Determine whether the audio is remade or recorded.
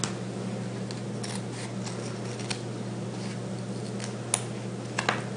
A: recorded